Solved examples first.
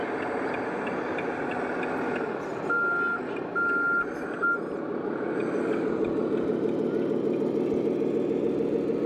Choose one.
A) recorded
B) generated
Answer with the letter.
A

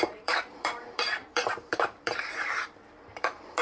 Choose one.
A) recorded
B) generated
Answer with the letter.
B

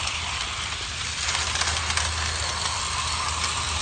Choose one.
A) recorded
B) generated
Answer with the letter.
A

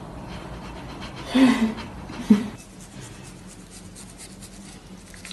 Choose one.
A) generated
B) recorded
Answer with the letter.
B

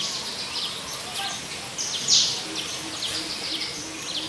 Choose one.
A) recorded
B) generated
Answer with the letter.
A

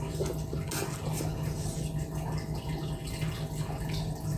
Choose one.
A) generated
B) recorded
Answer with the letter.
B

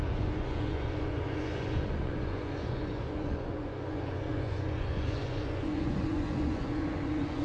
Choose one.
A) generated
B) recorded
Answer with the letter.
A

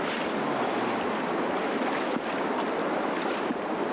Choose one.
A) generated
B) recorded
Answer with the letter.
B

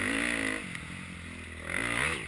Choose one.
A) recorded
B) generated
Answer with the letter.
A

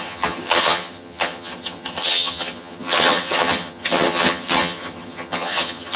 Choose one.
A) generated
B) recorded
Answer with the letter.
A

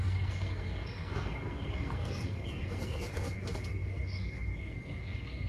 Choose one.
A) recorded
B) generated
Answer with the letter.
B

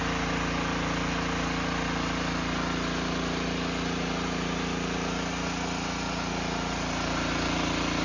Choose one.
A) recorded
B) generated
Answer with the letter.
A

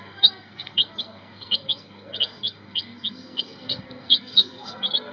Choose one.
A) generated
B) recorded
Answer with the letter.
A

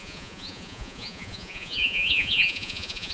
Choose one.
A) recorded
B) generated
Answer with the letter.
B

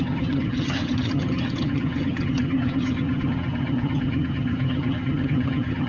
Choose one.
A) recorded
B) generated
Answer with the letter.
B